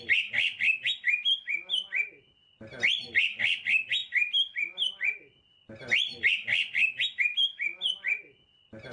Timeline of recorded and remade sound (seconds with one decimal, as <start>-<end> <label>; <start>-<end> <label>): 0.0-8.9 recorded